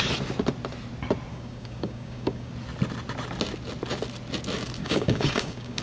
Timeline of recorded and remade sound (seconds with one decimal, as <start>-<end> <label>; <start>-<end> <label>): 0.0-1.3 recorded; 1.3-2.5 remade; 2.5-4.8 recorded; 4.8-5.8 remade